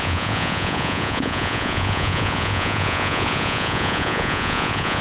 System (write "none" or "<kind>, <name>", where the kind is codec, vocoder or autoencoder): vocoder, Vocos